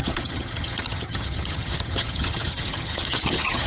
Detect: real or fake fake